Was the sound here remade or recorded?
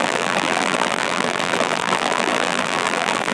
remade